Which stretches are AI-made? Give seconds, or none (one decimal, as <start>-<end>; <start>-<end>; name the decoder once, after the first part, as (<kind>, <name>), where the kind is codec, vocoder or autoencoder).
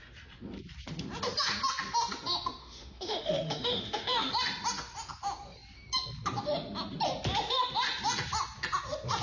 2.6-4.3 (autoencoder, DAC-VAE)